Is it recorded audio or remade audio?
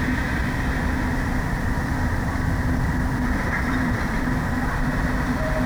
remade